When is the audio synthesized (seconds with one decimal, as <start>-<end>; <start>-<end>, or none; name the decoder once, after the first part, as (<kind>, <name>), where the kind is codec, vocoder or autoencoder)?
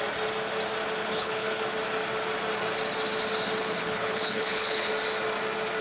1.0-1.6 (codec, HILCodec); 3.6-4.9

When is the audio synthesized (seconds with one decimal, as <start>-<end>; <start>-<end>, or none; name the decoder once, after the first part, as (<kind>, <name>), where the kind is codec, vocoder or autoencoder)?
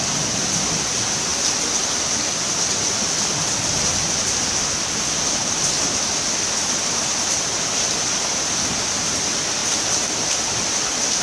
none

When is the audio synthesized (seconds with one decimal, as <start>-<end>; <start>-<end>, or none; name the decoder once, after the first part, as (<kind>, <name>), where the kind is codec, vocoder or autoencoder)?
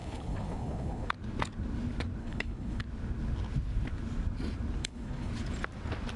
0.0-1.1 (codec, HILCodec); 2.2-2.8; 4.8-5.3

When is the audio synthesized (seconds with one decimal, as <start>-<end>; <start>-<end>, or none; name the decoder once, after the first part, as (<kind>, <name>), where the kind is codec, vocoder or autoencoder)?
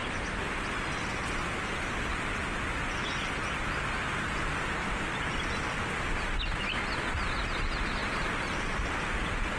none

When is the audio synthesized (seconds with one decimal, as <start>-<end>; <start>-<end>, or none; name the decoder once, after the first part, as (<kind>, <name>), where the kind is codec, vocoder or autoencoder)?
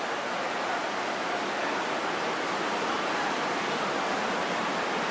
none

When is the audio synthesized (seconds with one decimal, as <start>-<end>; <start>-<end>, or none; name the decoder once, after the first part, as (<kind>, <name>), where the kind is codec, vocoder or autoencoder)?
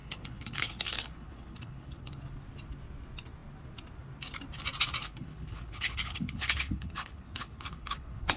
0.0-2.2 (codec, HILCodec); 5.0-8.4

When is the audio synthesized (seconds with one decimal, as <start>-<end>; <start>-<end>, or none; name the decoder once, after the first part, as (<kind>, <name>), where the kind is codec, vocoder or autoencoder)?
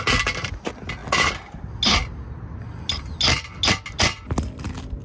none